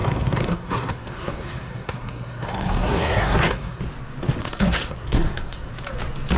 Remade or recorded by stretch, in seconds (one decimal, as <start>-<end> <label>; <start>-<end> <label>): 0.0-3.8 remade; 3.8-4.4 recorded; 4.4-5.7 remade; 5.7-6.4 recorded